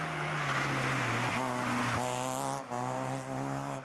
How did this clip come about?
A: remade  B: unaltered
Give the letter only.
B